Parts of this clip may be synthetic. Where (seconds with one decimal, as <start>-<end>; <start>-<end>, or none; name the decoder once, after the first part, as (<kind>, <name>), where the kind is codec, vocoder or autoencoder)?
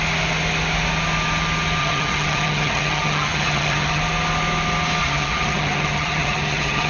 1.8-4.0 (vocoder, HiFi-GAN); 5.0-6.9